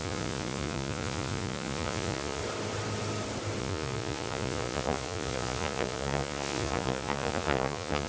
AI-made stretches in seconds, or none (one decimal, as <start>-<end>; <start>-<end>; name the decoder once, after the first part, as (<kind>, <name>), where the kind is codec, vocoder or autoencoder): 0.0-2.4 (vocoder, Vocos); 3.6-8.1